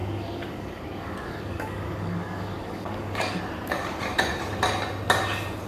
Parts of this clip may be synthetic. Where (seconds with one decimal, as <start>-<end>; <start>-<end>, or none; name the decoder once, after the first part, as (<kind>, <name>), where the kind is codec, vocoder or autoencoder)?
0.0-3.4 (codec, DAC)